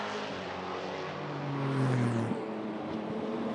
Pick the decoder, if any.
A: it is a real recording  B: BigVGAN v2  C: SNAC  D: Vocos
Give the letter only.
A